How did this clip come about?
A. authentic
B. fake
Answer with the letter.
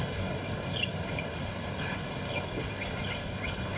B